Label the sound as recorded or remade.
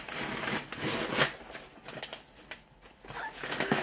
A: recorded